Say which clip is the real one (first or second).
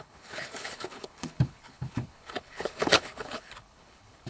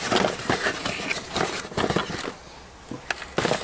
second